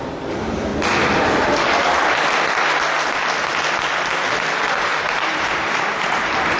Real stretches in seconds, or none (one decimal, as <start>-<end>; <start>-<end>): 0.7-4.7